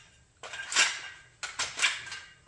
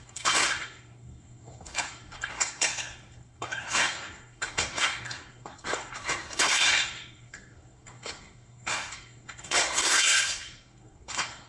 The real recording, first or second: first